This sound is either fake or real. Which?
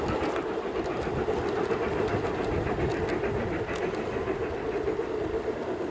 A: real